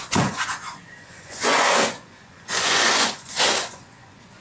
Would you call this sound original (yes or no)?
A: no